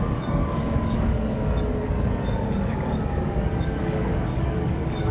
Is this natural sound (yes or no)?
no